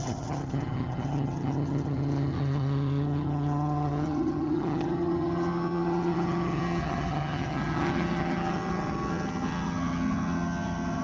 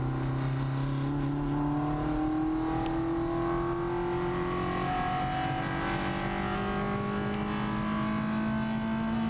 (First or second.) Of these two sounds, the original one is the second